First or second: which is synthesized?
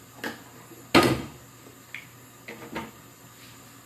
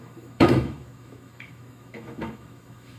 second